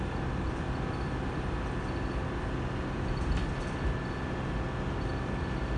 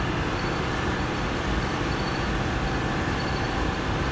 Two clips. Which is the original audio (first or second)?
first